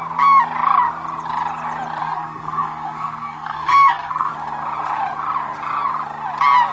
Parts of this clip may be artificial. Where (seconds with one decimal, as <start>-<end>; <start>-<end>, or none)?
2.0-4.3